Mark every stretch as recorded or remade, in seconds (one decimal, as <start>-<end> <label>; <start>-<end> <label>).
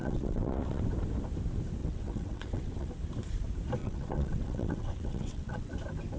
0.0-0.8 remade; 0.8-1.8 recorded; 1.8-2.9 remade; 2.9-3.8 recorded; 3.8-5.7 remade; 5.7-6.2 recorded